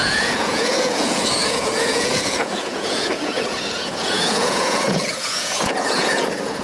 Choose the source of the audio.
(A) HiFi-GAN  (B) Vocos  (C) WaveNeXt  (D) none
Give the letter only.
B